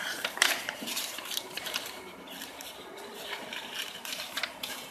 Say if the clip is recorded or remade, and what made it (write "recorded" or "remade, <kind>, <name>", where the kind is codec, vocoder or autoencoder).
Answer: remade, vocoder, BigVGAN v2